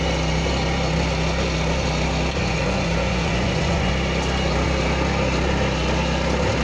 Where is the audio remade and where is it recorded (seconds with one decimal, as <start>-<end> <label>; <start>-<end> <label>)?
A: 0.0-2.4 recorded; 2.4-3.9 remade; 3.9-6.6 recorded